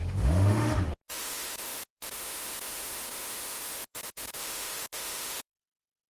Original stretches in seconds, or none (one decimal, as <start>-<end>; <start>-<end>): none